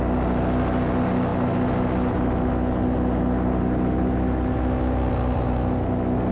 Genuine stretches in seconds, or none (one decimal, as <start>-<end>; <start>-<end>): 0.0-6.3